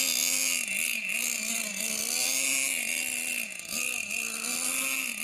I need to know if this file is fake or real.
real